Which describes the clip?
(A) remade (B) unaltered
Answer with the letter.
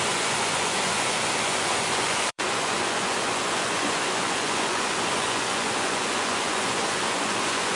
A